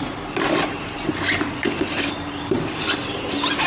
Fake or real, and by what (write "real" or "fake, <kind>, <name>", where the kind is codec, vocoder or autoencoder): real